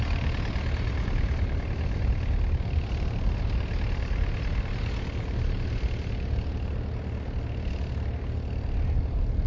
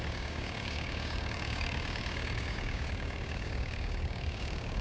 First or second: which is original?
first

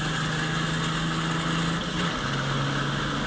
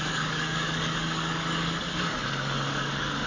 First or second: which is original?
first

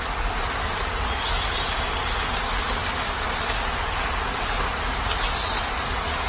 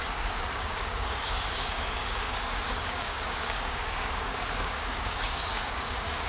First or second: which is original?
first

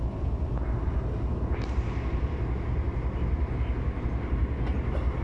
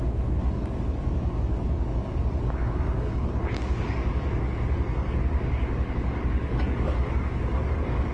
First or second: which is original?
first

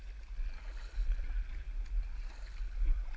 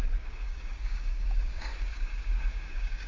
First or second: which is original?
first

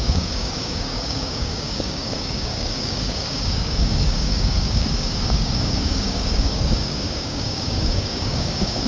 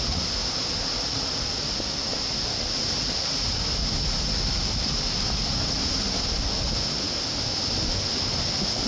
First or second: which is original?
second